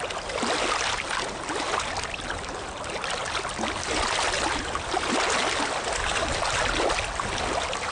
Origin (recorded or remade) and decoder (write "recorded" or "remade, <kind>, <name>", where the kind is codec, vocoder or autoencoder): recorded